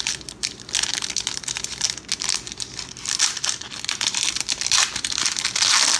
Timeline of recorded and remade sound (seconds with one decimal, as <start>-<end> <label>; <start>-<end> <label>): 0.0-6.0 recorded